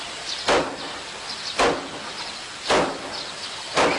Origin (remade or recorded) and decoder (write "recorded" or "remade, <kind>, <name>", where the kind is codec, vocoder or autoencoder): recorded